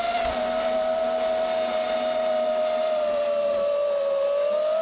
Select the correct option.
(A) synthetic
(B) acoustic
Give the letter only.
B